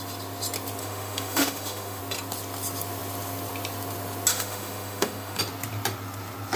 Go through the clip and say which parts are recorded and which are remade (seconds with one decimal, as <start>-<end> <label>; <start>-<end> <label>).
0.0-0.8 recorded; 0.8-2.0 remade; 2.0-4.3 recorded; 4.3-5.4 remade; 5.4-6.6 recorded